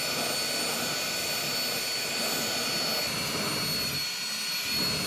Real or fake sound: real